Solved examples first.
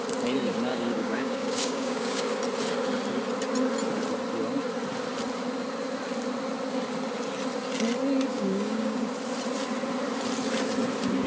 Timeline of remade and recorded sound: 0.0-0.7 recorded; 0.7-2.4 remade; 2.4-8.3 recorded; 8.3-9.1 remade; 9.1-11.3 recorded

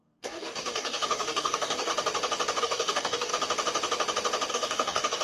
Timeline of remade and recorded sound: 0.0-1.9 remade; 1.9-2.6 recorded; 2.6-3.3 remade; 3.3-4.5 recorded; 4.5-5.2 remade

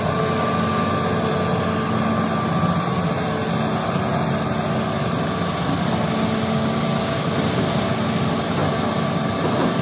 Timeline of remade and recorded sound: 0.0-7.0 recorded; 7.0-8.0 remade; 8.0-9.8 recorded

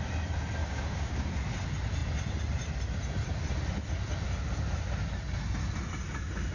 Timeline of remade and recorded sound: 0.0-0.6 recorded; 0.6-1.3 remade; 1.3-6.5 recorded

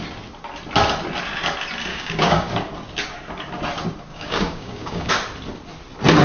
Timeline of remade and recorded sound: 0.0-1.9 recorded; 1.9-2.5 remade; 2.5-4.1 recorded; 4.1-5.1 remade; 5.1-6.2 recorded